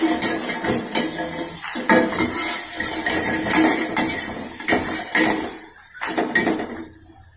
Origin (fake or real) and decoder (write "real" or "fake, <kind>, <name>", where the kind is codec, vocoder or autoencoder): real